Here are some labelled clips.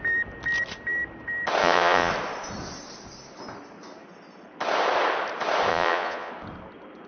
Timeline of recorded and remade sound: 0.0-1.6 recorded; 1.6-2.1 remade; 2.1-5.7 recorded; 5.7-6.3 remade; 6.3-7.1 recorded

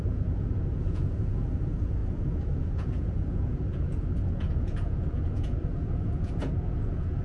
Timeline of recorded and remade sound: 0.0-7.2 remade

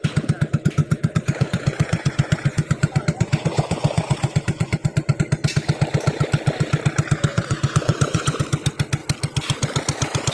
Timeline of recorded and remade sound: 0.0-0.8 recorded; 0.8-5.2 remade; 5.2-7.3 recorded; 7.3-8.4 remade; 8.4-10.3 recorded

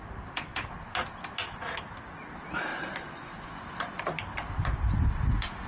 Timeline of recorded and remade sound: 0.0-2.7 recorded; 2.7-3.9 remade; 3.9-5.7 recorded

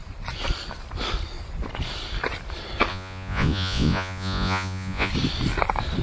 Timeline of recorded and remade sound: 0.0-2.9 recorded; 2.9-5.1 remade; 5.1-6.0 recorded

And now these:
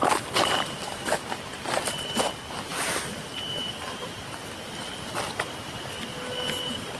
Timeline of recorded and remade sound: 0.0-7.0 recorded